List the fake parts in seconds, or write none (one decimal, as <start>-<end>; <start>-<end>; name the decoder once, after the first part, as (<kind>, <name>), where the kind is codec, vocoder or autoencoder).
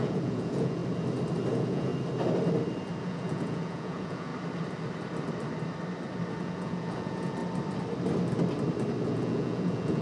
0.0-0.8 (vocoder, Vocos); 1.5-1.9; 3.0-4.3; 6.4-7.4; 9.0-10.0